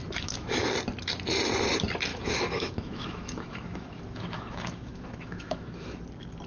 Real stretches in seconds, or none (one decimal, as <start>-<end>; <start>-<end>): 0.6-2.1; 6.0-6.5